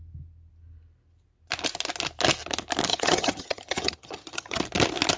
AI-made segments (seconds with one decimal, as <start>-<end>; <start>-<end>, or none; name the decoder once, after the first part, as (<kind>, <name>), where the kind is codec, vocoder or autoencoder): 2.9-4.6 (vocoder, HiFi-GAN)